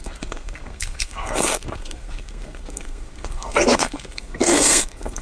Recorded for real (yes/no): no